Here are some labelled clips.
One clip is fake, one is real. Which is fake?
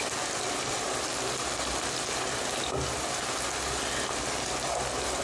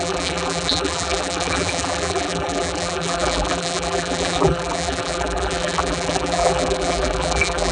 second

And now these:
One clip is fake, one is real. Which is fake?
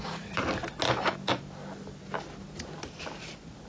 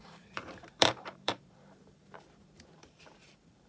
second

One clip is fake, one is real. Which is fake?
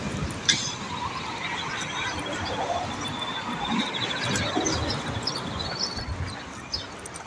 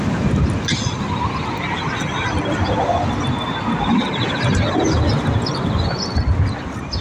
first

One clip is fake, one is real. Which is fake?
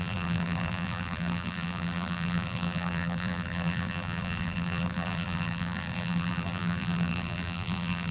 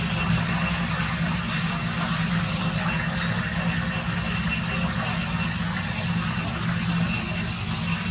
first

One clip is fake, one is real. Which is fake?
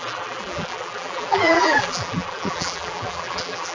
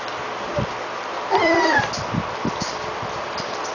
first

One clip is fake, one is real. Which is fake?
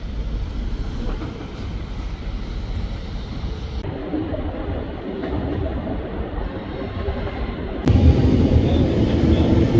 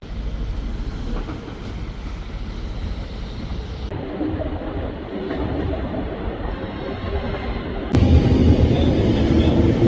first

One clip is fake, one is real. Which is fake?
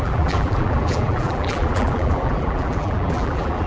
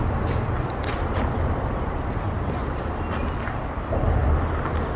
first